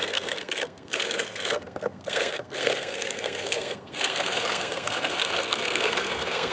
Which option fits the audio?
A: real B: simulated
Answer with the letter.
B